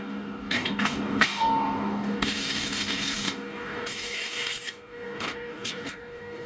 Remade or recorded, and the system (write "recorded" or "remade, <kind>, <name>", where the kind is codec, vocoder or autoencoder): remade, codec, DAC